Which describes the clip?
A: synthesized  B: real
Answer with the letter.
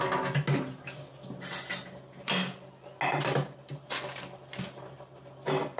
B